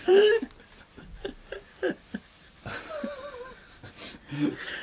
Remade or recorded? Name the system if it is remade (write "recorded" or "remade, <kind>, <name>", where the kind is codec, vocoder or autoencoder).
remade, vocoder, BigVGAN v2